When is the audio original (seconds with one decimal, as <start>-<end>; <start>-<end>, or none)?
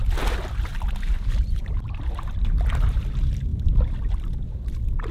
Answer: 0.0-0.7; 2.3-5.1